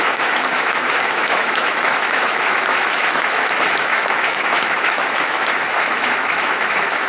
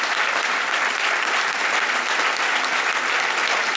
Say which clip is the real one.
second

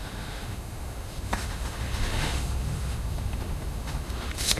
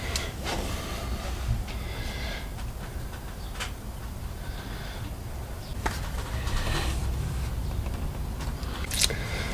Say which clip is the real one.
second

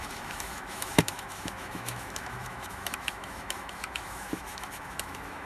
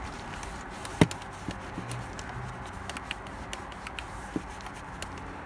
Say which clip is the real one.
second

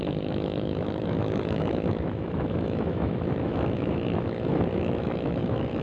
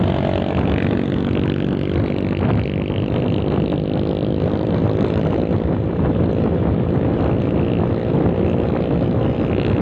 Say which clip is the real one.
second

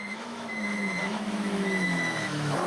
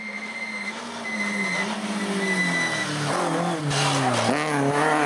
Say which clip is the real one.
second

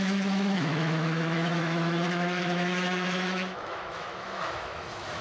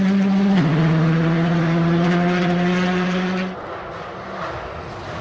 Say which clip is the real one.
second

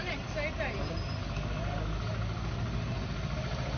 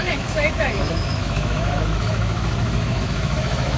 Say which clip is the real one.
first